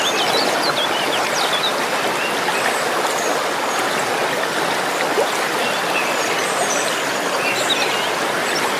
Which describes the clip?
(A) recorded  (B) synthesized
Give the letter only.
A